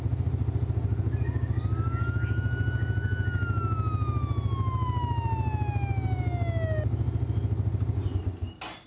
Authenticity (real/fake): real